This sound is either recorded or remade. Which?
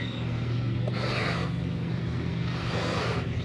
remade